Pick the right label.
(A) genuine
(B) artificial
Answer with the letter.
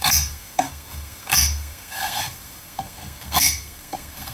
B